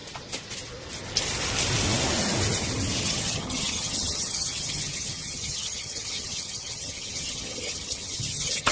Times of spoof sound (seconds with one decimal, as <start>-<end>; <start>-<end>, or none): 3.0-8.7